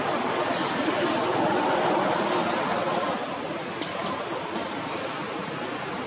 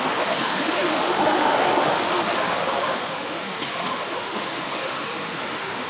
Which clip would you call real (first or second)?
first